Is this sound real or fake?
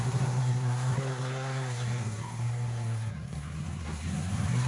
fake